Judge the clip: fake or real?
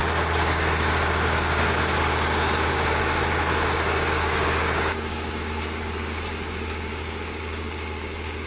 fake